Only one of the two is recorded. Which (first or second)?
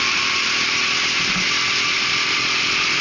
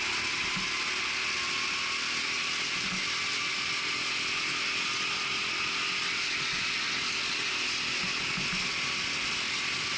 second